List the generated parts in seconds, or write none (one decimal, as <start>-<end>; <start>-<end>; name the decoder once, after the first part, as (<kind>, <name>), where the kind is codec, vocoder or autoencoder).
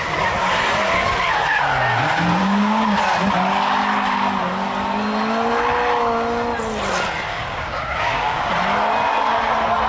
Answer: 2.4-3.0 (codec, DAC); 7.3-8.5